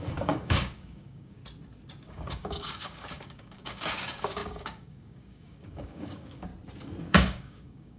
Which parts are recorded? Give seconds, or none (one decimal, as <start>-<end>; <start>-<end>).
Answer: 1.4-2.0; 6.5-7.0